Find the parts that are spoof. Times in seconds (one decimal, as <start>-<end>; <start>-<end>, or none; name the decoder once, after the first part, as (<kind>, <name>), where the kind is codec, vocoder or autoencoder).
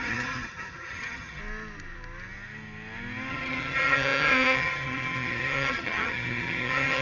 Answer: 0.0-1.4 (vocoder, HiFi-GAN); 3.3-7.0